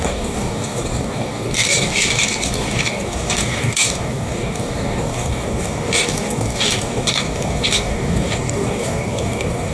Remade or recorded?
remade